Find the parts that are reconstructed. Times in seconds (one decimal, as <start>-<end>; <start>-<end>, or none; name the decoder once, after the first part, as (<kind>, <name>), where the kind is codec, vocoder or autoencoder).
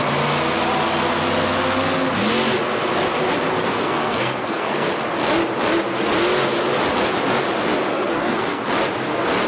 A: 3.6-4.9 (codec, SNAC); 7.9-8.6